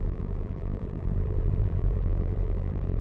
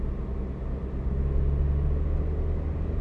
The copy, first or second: first